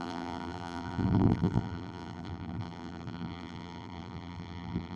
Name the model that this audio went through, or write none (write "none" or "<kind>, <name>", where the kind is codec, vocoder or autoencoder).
vocoder, BigVGAN v2